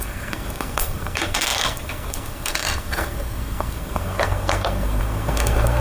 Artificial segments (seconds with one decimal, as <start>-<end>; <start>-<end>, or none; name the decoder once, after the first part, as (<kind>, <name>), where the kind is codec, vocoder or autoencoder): 0.0-5.8 (codec, SNAC)

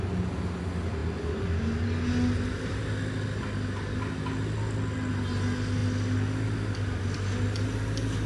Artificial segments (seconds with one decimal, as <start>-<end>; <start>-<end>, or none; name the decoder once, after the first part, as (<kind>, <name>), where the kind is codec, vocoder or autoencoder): none

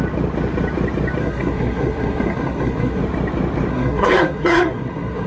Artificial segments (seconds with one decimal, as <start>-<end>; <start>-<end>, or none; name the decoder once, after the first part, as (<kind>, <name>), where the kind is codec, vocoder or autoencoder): 1.2-3.0 (codec, SNAC); 3.7-5.3

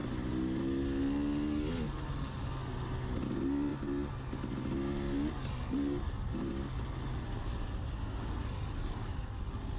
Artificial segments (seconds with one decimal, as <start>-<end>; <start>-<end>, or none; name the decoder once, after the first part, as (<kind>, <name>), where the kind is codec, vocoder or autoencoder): none